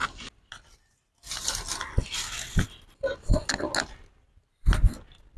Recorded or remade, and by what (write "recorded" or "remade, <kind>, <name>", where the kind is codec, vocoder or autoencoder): recorded